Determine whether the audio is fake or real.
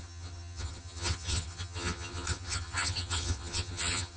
fake